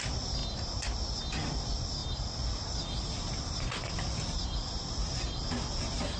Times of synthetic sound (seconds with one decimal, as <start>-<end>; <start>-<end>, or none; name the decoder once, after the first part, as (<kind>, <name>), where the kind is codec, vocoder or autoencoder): 0.0-0.4 (vocoder, BigVGAN v2); 1.2-6.2